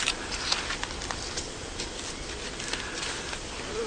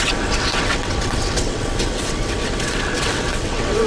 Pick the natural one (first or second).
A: first